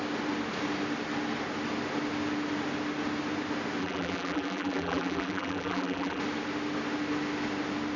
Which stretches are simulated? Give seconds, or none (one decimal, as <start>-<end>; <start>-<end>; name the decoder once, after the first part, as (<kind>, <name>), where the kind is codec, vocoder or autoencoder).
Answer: 3.8-6.2 (vocoder, BigVGAN v2)